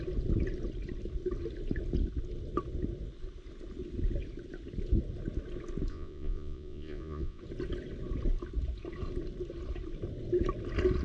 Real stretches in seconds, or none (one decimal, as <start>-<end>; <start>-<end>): 0.0-5.9; 7.4-11.0